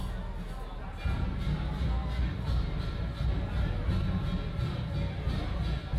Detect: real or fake real